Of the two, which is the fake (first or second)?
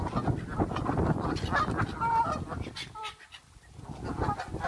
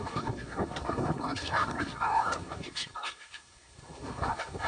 second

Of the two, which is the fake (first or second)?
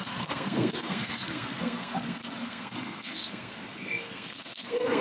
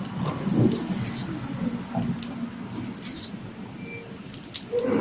first